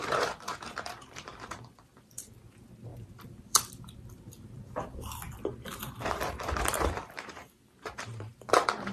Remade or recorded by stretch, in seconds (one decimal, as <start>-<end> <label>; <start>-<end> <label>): 0.0-8.9 remade